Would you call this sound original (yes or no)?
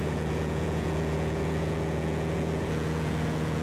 no